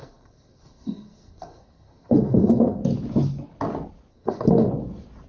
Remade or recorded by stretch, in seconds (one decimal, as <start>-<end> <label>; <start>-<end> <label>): 0.0-2.8 remade; 2.8-4.1 recorded; 4.1-4.7 remade; 4.7-5.3 recorded